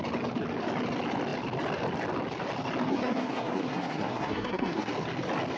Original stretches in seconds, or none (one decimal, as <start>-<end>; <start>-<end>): 0.0-2.9; 4.9-5.6